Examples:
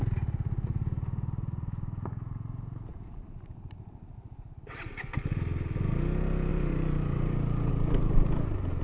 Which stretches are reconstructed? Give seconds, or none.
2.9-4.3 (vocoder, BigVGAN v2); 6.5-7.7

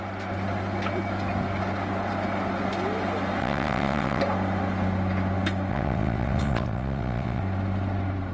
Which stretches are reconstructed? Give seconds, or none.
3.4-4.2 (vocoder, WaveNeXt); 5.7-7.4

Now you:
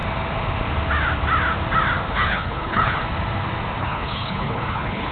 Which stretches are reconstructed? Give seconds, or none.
2.1-3.0 (codec, HILCodec); 3.8-5.1